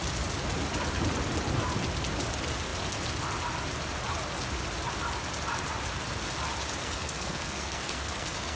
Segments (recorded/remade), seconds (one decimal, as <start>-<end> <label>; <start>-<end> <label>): 0.0-6.8 recorded; 6.8-8.6 remade

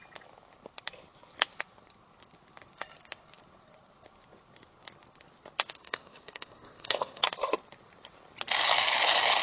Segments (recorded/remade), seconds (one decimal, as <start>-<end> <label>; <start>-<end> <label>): 0.0-5.8 recorded; 5.8-7.2 remade; 7.2-9.4 recorded

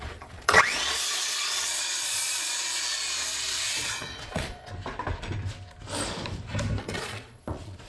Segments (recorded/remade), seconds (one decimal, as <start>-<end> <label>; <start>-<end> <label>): 0.0-4.7 remade; 4.7-6.8 recorded; 6.8-7.9 remade

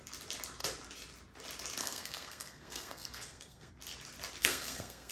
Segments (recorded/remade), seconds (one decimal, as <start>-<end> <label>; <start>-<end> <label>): 0.0-1.8 recorded; 1.8-3.7 remade; 3.7-4.4 recorded; 4.4-5.1 remade

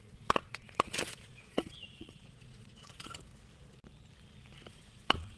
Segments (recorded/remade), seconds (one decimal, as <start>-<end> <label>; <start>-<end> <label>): 0.0-3.3 remade; 3.3-4.7 recorded; 4.7-5.4 remade

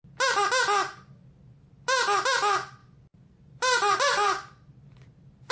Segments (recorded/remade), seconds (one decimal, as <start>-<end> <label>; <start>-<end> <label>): 0.0-2.8 recorded; 2.8-4.7 remade; 4.7-5.5 recorded

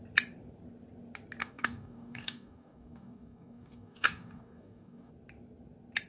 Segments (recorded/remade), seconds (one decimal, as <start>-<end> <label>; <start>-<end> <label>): 0.0-1.4 recorded; 1.4-5.1 remade; 5.1-6.1 recorded